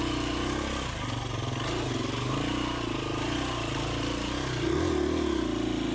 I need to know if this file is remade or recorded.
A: recorded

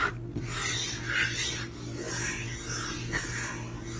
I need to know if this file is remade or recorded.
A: recorded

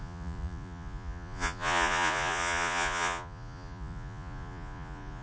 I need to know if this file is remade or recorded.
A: remade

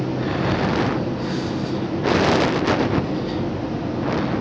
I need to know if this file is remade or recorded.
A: recorded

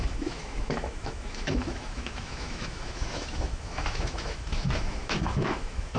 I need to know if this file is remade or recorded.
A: remade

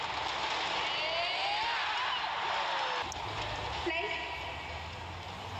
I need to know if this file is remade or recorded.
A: recorded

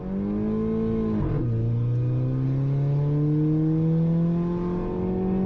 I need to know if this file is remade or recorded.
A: recorded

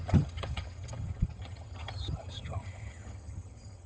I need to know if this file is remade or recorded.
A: remade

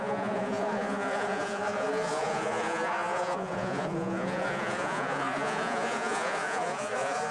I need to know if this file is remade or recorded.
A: remade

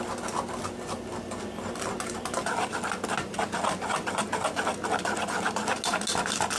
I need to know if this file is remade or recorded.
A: recorded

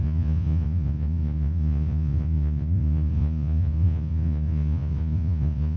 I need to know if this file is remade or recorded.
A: remade